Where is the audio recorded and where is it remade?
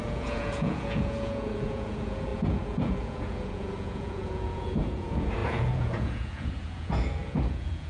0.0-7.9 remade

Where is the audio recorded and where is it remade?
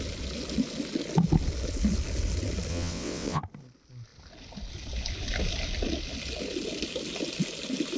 0.0-2.7 recorded; 2.7-3.4 remade; 3.4-8.0 recorded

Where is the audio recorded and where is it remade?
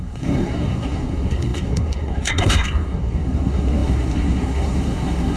0.0-5.4 remade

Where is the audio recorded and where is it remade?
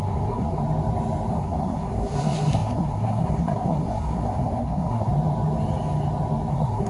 0.0-0.6 remade; 0.6-1.3 recorded; 1.3-5.1 remade; 5.1-6.5 recorded; 6.5-6.9 remade